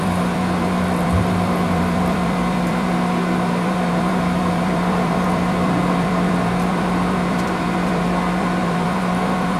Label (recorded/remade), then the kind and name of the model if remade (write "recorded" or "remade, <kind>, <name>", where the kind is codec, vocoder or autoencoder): remade, vocoder, BigVGAN v2